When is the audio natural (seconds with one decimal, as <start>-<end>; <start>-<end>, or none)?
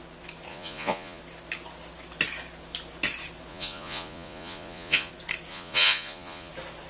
0.0-0.5; 1.2-3.5; 5.1-5.5; 6.5-6.9